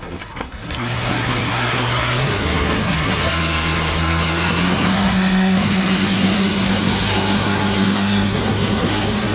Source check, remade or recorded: remade